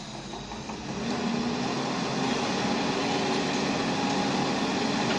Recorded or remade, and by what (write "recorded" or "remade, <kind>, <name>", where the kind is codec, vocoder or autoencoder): recorded